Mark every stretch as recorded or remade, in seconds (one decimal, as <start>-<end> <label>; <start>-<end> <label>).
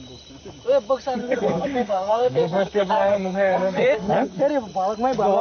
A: 0.0-1.2 recorded; 1.2-4.4 remade; 4.4-5.4 recorded